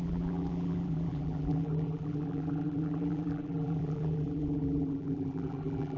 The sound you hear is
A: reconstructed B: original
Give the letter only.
A